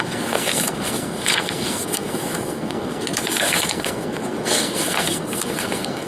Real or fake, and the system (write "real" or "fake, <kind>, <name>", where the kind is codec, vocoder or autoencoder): fake, codec, SNAC